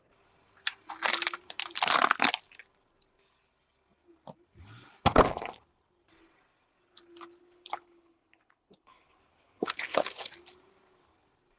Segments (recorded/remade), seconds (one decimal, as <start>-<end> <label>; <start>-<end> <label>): 0.0-7.4 recorded; 7.4-10.3 remade; 10.3-11.6 recorded